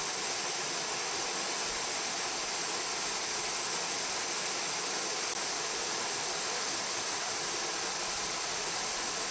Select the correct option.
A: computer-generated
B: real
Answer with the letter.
B